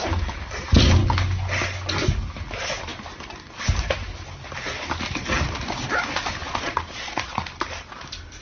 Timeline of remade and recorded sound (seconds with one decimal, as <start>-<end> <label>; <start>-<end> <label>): 0.0-6.4 recorded; 6.4-7.5 remade; 7.5-8.4 recorded